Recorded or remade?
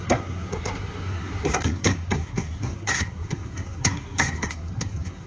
remade